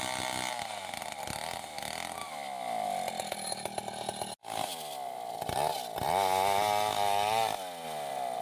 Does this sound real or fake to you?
real